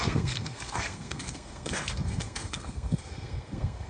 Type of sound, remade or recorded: remade